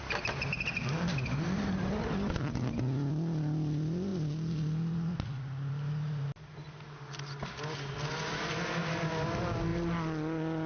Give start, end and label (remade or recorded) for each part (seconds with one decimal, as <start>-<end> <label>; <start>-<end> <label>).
0.0-10.7 recorded